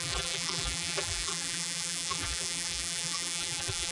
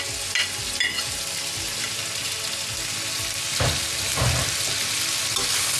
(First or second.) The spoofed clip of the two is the first